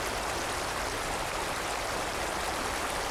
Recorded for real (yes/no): yes